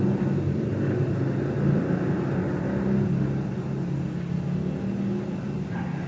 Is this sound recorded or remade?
recorded